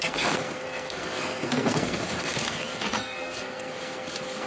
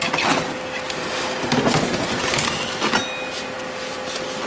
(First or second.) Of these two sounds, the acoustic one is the second